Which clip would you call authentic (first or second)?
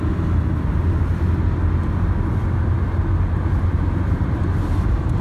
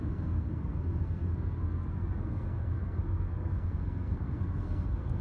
first